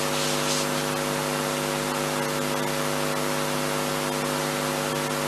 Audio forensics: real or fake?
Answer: real